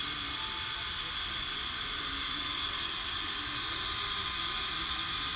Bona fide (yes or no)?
yes